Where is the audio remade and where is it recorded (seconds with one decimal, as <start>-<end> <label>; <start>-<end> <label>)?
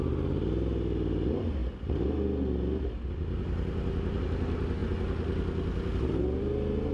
0.0-6.9 recorded